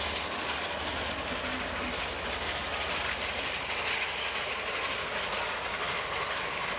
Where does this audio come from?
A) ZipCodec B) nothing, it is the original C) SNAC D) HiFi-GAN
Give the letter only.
B